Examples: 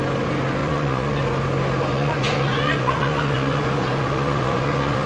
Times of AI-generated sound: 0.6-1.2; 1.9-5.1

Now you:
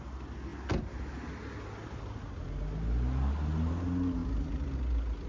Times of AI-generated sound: none

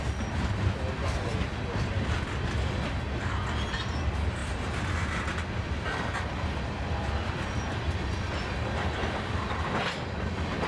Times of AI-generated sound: none

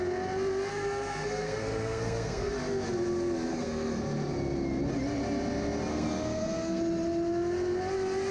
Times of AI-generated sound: 0.7-2.5; 3.5-4.0; 5.9-6.8

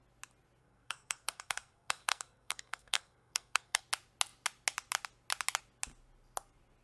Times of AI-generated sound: 0.6-3.8

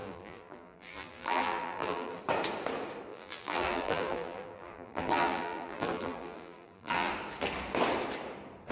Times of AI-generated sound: 0.0-2.2; 3.1-7.1